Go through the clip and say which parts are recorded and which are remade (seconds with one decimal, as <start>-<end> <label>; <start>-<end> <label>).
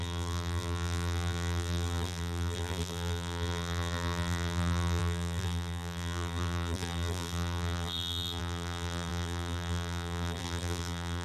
0.0-11.2 remade